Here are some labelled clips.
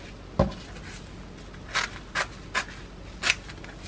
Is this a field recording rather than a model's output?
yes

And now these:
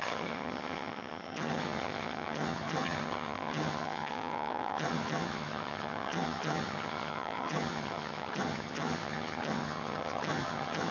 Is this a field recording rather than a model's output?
no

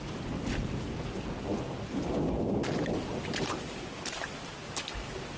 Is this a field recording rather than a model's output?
yes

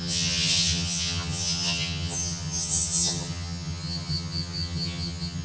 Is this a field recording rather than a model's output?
no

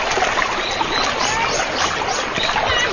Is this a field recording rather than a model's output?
yes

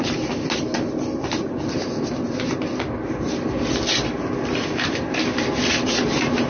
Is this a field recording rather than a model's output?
yes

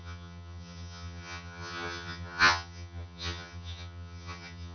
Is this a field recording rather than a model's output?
no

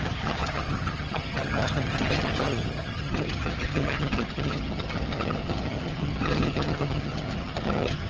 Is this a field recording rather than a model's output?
no